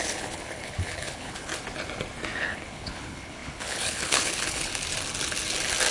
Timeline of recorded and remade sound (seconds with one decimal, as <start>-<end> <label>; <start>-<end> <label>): 0.0-1.5 remade; 1.5-2.4 recorded; 2.4-4.7 remade; 4.7-5.9 recorded